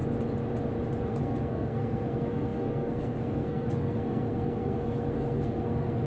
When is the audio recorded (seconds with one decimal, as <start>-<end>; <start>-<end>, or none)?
0.0-1.0